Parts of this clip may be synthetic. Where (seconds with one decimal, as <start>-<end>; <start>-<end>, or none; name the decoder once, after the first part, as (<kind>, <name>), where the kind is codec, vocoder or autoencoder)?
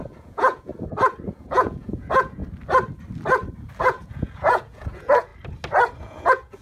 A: 0.0-0.7 (vocoder, Vocos); 1.4-2.4; 3.8-5.3; 6.0-6.6